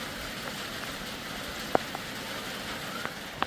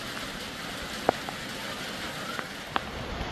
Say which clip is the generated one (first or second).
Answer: second